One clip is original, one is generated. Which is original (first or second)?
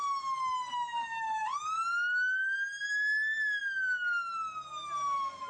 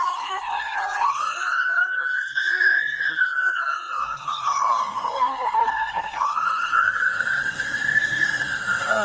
first